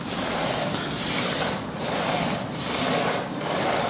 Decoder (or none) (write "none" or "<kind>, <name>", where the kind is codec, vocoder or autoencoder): none